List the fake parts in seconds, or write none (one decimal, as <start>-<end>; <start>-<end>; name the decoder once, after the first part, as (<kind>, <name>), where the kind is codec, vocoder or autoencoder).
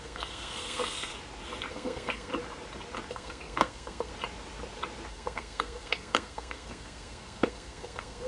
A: 0.0-1.1 (codec, SNAC); 1.7-2.3; 3.1-4.1; 5.1-8.3